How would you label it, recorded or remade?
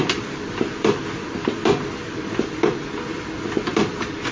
recorded